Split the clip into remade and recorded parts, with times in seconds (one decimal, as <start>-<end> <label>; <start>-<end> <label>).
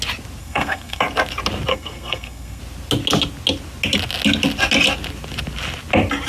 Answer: 0.0-0.4 recorded; 0.4-1.0 remade; 1.0-1.7 recorded; 1.7-2.6 remade; 2.6-6.3 recorded